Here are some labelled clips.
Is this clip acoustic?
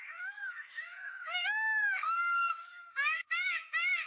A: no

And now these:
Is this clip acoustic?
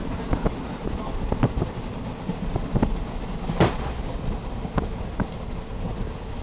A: yes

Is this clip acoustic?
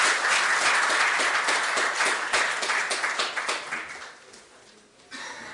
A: yes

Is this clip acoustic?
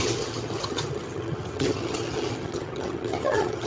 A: no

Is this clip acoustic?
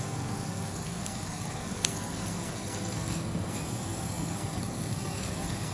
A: no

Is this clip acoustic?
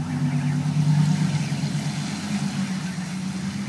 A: yes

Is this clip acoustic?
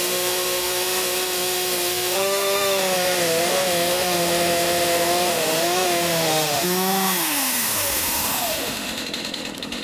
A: no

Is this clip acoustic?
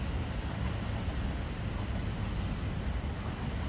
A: yes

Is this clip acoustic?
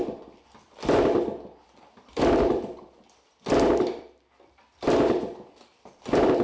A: no